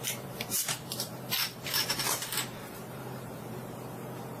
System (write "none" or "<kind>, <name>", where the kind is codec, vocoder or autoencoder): vocoder, BigVGAN v2